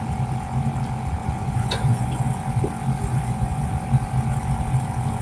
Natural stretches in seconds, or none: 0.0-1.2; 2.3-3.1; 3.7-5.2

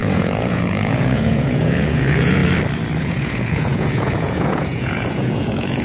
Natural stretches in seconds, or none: 2.4-3.0

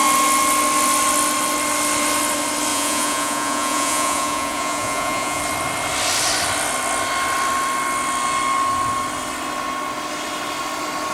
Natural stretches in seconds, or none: 0.0-2.7; 5.4-11.1